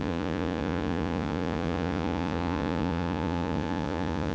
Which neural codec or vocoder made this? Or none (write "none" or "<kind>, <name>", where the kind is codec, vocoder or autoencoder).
vocoder, Vocos